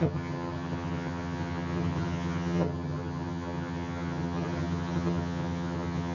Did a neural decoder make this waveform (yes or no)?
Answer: yes